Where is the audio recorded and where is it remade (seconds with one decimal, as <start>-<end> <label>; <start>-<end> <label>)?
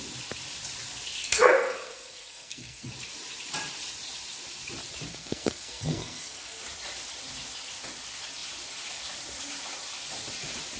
0.0-1.2 recorded; 1.2-2.9 remade; 2.9-5.1 recorded; 5.1-6.6 remade; 6.6-10.8 recorded